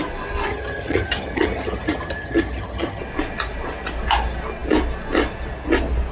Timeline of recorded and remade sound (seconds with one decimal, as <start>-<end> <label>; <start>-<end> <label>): 0.0-0.5 recorded; 0.5-3.0 remade; 3.0-6.1 recorded